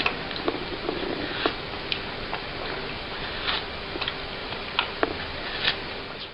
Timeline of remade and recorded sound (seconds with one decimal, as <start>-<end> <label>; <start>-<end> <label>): 0.0-4.4 recorded; 4.4-4.9 remade; 4.9-6.3 recorded